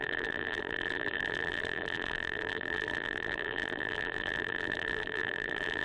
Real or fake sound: fake